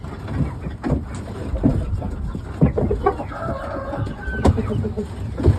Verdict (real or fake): real